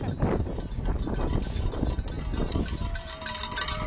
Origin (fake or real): real